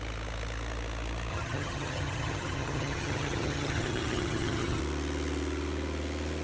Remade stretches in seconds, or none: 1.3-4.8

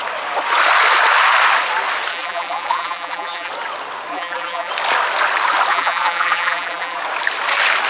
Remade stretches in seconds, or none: 2.1-3.5; 4.1-4.7; 5.7-7.0

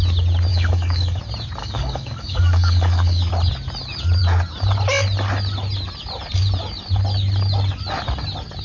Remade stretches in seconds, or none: 0.5-1.2; 1.6-3.3

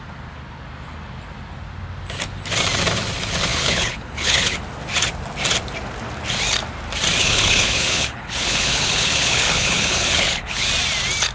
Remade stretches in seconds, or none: 3.5-4.6; 7.2-10.7

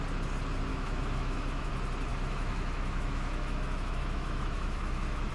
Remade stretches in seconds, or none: 0.7-1.7; 2.1-5.3

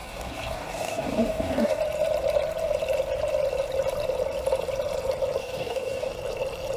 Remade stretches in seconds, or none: 0.0-1.8; 5.4-6.1

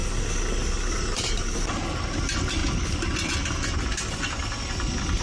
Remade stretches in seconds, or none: 0.7-2.6

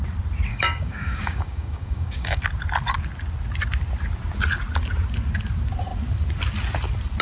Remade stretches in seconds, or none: 0.5-2.4